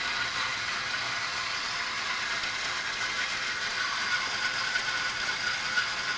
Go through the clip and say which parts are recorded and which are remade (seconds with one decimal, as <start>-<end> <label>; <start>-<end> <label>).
0.0-6.2 recorded